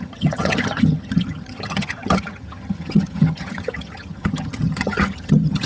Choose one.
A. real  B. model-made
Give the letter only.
B